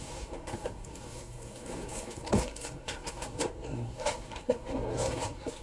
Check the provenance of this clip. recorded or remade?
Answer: remade